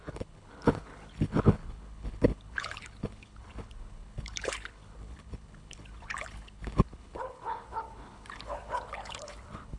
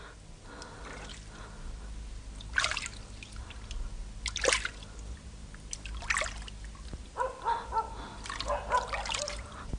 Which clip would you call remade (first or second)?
first